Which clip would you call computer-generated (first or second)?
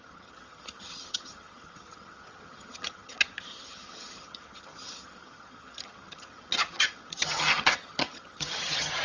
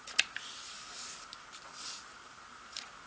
first